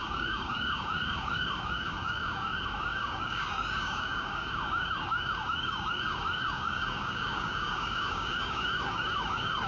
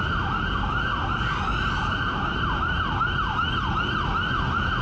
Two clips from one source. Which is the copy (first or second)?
first